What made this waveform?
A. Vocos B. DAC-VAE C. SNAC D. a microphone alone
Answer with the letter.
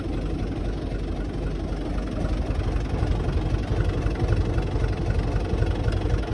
D